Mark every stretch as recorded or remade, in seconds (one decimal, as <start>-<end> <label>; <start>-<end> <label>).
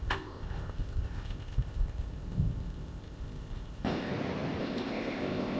0.0-4.1 remade; 4.1-4.6 recorded; 4.6-5.6 remade